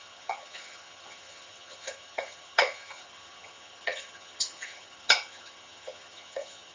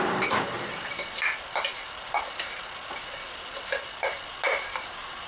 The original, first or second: second